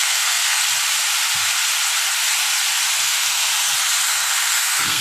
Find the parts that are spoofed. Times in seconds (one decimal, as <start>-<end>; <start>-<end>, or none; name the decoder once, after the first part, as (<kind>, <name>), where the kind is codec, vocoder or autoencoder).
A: 0.0-0.6 (codec, SNAC); 3.0-3.5; 4.1-5.0